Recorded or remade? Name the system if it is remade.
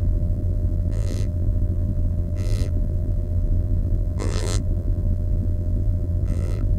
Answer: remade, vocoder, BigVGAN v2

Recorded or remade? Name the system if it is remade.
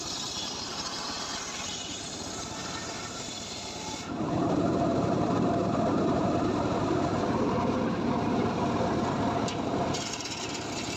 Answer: remade, vocoder, BigVGAN v2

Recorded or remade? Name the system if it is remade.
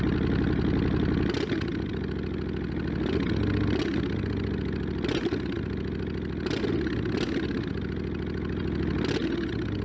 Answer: recorded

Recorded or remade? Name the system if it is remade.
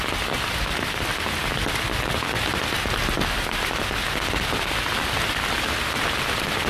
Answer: recorded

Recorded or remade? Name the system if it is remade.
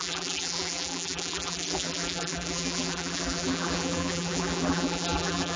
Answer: remade, vocoder, BigVGAN v2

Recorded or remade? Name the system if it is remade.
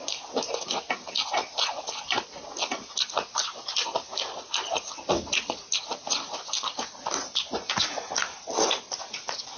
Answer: recorded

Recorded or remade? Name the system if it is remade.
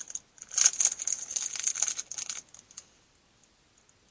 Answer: recorded